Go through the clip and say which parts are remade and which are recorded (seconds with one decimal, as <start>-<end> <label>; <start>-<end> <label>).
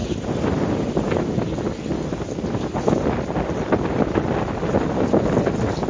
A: 0.0-5.9 recorded